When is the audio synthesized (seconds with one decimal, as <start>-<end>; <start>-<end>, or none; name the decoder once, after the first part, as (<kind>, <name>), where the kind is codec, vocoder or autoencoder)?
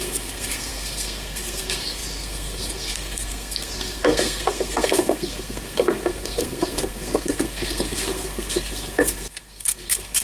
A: 0.0-10.2 (codec, SNAC)